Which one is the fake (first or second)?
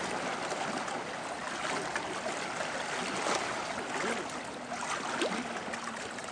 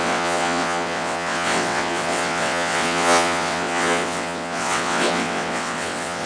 second